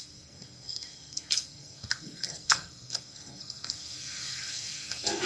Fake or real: fake